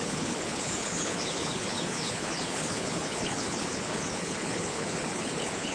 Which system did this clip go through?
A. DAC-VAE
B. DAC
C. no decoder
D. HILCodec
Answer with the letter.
D